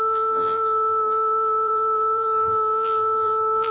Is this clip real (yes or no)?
no